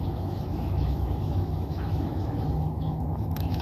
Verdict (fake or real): fake